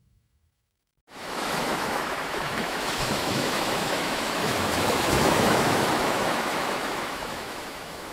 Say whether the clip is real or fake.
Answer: fake